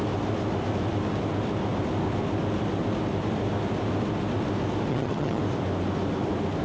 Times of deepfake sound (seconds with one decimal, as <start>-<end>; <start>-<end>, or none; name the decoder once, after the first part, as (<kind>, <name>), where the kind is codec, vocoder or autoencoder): 4.9-5.4 (vocoder, HiFi-GAN)